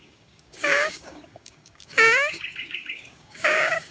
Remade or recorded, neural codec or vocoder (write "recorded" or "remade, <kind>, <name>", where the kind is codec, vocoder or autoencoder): remade, codec, DAC